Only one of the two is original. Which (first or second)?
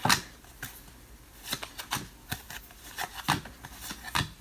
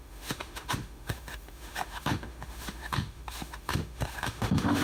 first